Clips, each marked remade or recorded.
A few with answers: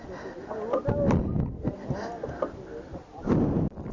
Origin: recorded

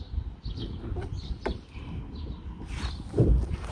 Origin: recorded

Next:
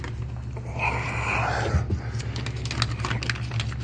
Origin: recorded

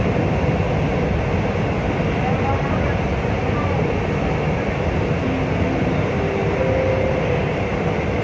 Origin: recorded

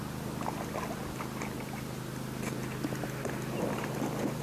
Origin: recorded